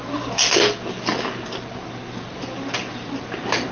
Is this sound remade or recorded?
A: recorded